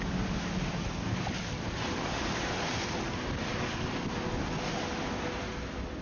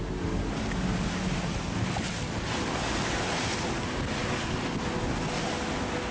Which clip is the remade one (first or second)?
first